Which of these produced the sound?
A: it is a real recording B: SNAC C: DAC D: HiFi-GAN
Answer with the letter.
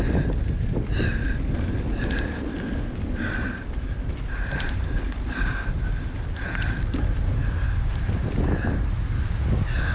A